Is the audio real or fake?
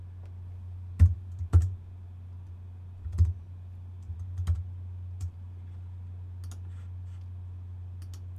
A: real